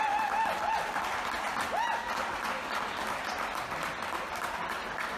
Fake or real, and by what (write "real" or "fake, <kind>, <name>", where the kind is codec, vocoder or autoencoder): real